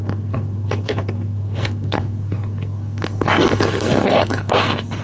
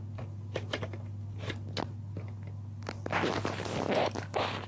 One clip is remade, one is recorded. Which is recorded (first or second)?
second